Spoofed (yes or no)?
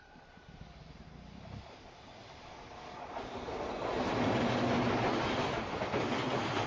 no